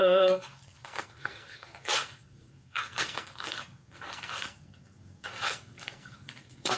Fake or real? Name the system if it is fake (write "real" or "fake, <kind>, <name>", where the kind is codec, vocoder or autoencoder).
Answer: fake, codec, SNAC